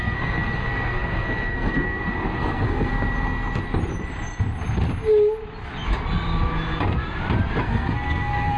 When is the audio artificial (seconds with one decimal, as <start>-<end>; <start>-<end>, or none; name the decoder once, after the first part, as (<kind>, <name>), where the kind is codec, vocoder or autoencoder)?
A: 0.0-2.9 (codec, SNAC); 7.6-8.6

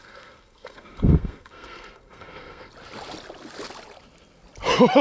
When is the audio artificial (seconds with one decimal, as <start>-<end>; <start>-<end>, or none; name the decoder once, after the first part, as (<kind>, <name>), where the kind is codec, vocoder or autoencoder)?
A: 0.0-2.7 (codec, SNAC)

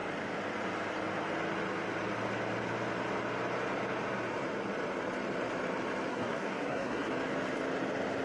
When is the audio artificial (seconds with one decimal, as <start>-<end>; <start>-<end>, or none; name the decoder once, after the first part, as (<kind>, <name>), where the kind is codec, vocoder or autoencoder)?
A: 6.1-7.1 (codec, SNAC)